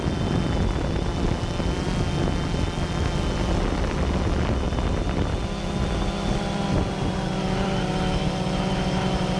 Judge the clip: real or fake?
real